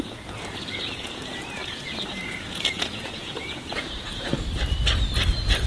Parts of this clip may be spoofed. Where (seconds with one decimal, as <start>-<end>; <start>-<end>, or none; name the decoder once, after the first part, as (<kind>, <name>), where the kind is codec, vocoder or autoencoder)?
0.0-4.3 (vocoder, Vocos)